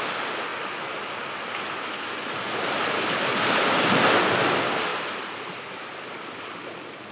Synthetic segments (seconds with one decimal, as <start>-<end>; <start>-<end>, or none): none